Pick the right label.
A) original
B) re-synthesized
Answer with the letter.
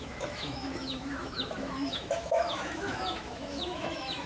B